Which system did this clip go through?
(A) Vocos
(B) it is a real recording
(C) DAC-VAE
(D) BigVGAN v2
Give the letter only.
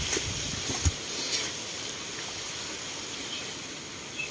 B